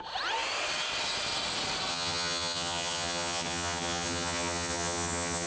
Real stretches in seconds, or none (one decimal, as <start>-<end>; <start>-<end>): 0.0-1.9